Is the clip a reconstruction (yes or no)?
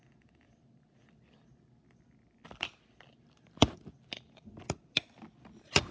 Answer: no